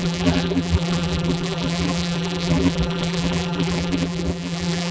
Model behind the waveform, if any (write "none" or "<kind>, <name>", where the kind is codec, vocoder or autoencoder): vocoder, BigVGAN v2